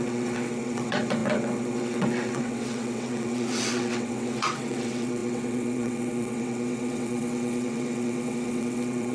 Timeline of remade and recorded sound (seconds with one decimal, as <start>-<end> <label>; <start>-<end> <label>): 0.0-9.1 remade